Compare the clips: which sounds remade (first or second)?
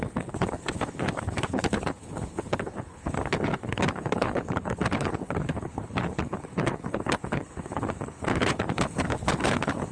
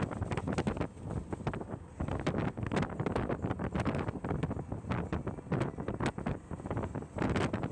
first